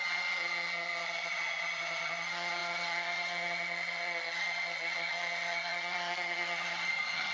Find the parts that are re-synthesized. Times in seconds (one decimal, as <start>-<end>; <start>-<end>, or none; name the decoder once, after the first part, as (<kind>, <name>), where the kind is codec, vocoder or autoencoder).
0.0-7.3 (vocoder, HiFi-GAN)